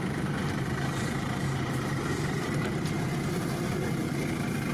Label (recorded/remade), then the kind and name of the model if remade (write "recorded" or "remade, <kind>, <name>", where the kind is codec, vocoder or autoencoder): remade, vocoder, BigVGAN v2